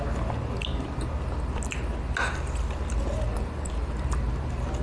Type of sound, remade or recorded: recorded